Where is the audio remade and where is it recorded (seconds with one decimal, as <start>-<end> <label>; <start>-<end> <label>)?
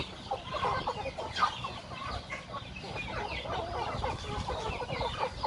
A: 0.0-5.5 recorded